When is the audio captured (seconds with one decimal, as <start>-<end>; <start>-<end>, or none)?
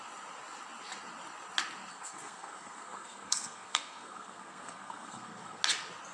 0.0-1.9; 5.6-6.1